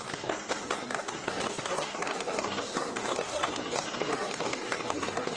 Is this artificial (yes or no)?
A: yes